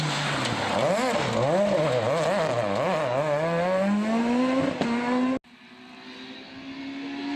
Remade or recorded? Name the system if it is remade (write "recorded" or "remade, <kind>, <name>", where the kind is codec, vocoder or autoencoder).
recorded